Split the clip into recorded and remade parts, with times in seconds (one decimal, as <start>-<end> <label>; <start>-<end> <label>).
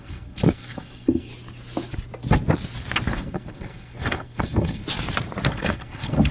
0.0-1.3 remade; 1.3-3.1 recorded; 3.1-4.8 remade; 4.8-5.5 recorded; 5.5-6.3 remade